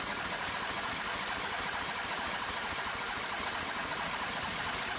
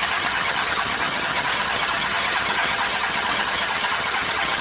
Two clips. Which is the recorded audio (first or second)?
first